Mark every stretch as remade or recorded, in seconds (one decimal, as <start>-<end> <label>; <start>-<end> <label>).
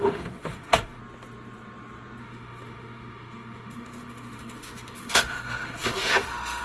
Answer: 0.0-1.0 remade; 1.0-2.2 recorded; 2.2-6.6 remade